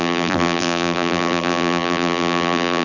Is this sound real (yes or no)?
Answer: no